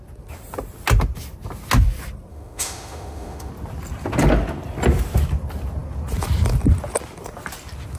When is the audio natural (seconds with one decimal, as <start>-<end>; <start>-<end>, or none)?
0.0-2.3; 3.5-8.0